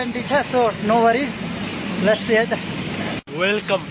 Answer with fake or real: real